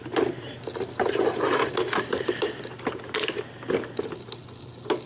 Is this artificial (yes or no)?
no